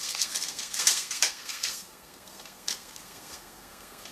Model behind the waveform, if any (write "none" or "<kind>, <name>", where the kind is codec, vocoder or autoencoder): codec, SNAC